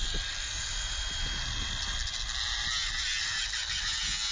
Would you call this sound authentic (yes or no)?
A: yes